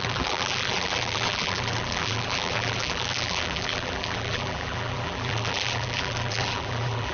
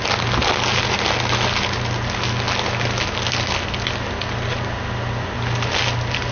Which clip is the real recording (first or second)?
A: second